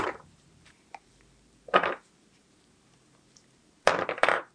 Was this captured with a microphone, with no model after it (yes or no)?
no